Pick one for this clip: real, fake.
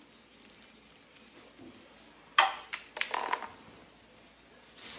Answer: real